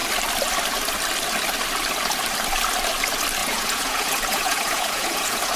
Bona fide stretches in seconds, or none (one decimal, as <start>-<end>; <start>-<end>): 0.0-3.4